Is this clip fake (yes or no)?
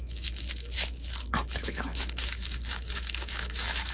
yes